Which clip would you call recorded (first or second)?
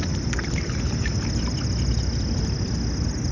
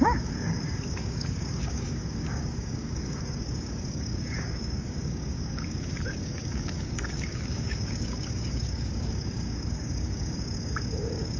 first